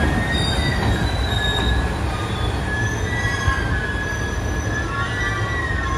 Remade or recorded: recorded